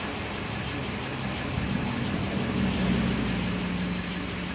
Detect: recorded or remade recorded